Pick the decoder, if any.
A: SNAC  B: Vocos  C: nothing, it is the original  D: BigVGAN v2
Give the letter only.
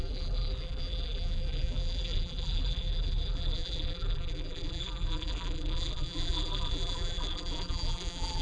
D